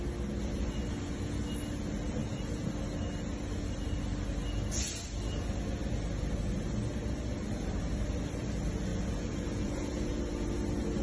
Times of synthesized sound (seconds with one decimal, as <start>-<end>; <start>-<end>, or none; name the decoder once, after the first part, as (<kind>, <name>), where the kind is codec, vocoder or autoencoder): 2.2-2.7 (vocoder, Vocos); 8.9-10.2